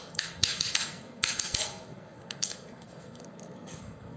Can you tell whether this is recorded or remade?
remade